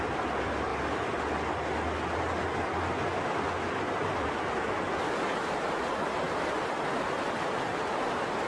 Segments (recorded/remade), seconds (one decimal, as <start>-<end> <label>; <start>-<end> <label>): 0.0-8.5 recorded